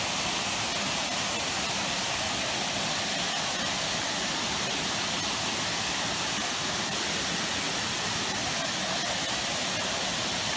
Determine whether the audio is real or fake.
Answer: real